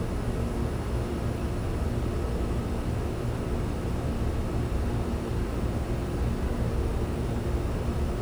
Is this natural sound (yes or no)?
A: yes